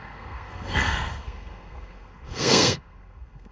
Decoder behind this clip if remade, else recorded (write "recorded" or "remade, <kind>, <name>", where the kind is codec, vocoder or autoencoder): remade, codec, SNAC